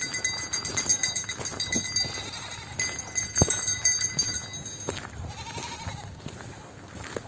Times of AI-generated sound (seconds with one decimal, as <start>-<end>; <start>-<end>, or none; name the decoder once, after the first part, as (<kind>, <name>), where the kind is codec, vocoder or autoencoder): none